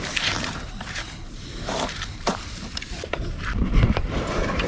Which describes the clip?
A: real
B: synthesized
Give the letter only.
B